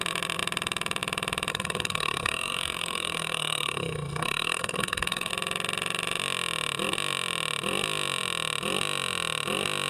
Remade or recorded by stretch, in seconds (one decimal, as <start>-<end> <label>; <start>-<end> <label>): 0.0-1.5 recorded; 1.5-5.3 remade; 5.3-9.9 recorded